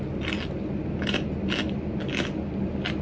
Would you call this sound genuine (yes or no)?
yes